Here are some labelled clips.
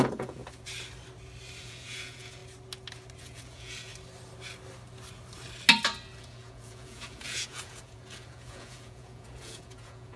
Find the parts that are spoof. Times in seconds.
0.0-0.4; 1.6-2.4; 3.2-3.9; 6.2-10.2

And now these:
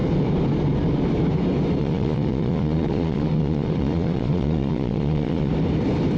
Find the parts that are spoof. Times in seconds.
1.8-5.5

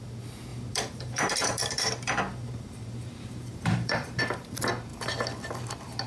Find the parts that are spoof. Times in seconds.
0.5-4.2